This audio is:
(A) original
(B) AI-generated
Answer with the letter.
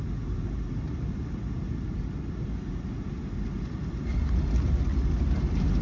A